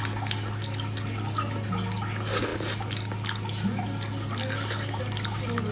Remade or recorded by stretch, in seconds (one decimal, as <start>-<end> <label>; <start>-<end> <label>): 0.0-5.7 recorded